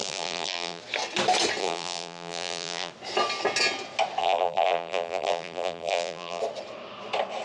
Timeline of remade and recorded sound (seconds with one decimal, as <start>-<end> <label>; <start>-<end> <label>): 0.0-0.8 remade; 0.8-1.6 recorded; 1.6-2.9 remade; 2.9-4.2 recorded; 4.2-6.4 remade; 6.4-7.4 recorded

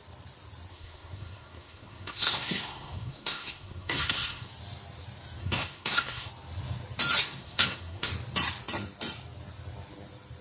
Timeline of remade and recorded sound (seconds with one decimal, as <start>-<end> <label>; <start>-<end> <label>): 0.0-0.7 recorded; 0.7-4.5 remade; 4.5-5.4 recorded; 5.4-6.3 remade; 6.3-7.2 recorded; 7.2-8.1 remade; 8.1-10.4 recorded